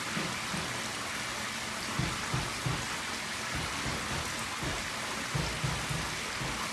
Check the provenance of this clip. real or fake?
real